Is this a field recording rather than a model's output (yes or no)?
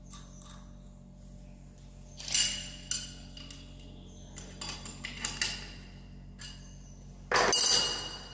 yes